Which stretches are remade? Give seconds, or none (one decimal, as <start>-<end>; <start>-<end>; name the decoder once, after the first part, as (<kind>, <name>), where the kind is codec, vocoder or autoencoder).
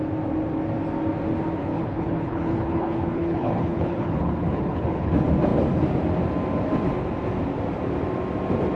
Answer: 1.6-5.1 (codec, HILCodec)